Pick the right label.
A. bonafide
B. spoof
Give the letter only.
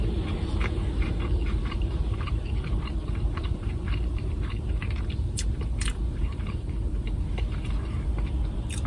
B